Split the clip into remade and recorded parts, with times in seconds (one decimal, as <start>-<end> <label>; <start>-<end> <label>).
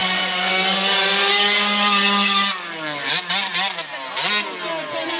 0.0-3.1 remade; 3.1-5.2 recorded